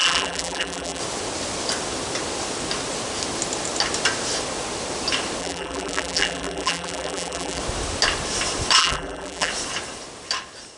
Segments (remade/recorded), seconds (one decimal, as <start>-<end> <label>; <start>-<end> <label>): 0.0-1.0 remade; 1.0-5.4 recorded; 5.4-7.6 remade; 7.6-8.8 recorded; 8.8-9.5 remade; 9.5-10.8 recorded